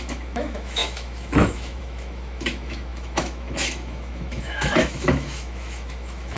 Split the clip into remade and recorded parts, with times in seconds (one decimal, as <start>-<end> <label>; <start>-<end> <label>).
0.0-6.4 remade